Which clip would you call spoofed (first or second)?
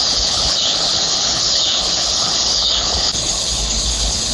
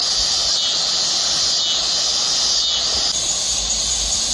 first